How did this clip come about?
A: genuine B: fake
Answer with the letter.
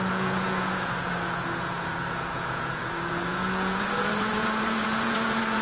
B